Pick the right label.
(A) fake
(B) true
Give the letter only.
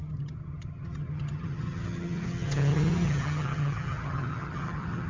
A